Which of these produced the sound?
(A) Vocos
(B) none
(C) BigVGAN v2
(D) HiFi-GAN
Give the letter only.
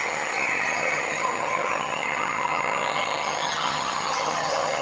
D